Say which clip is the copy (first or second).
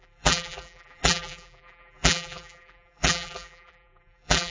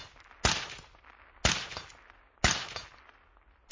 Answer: first